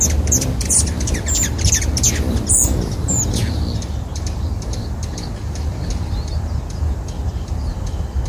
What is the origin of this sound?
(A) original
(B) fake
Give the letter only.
A